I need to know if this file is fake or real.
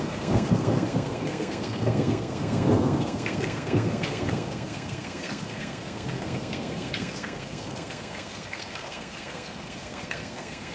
fake